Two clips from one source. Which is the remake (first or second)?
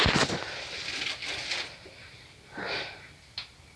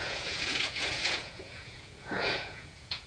second